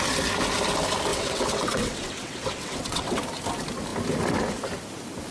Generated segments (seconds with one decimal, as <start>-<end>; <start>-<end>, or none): 1.1-3.2